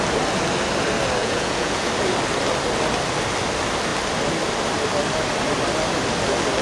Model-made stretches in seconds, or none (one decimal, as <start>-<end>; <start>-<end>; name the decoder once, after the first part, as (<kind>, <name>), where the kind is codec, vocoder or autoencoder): 1.2-1.9 (vocoder, Vocos)